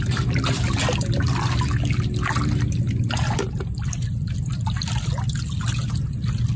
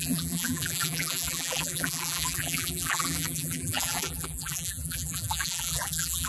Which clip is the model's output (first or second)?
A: second